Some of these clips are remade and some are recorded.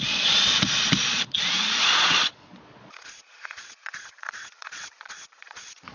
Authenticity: remade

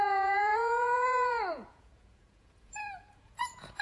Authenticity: remade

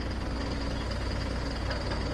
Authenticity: recorded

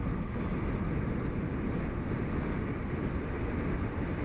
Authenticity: recorded